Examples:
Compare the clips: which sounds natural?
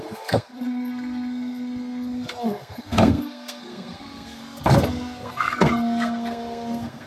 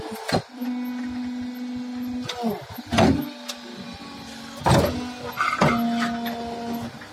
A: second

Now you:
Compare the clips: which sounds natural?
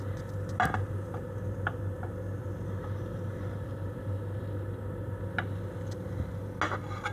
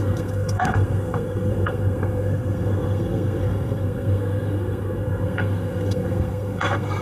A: first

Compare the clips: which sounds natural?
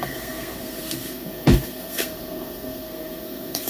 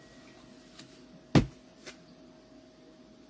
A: second